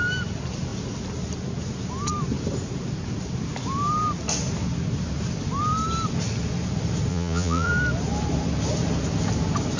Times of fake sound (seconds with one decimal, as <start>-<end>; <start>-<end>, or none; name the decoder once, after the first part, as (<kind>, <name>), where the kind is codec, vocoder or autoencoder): 7.1-7.7 (vocoder, Vocos)